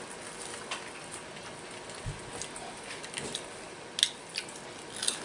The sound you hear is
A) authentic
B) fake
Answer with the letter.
A